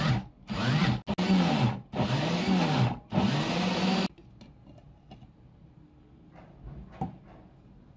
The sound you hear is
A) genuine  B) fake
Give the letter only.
A